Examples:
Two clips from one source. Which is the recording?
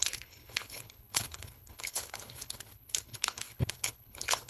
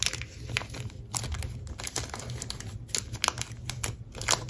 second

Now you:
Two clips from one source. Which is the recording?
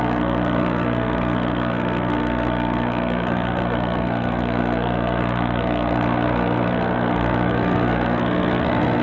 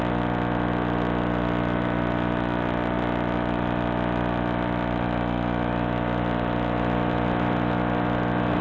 second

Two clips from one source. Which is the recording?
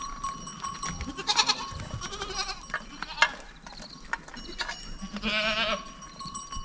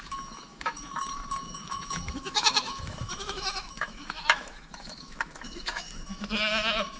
first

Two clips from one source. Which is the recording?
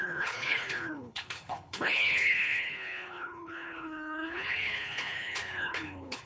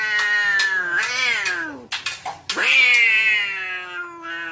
second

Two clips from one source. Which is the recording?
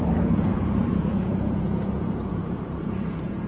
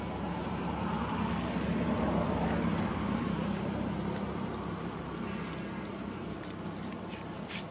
second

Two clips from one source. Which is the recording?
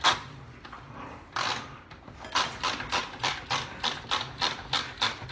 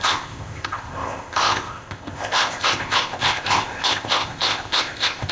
first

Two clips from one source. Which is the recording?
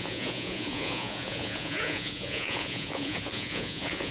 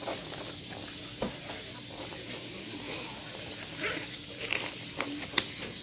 second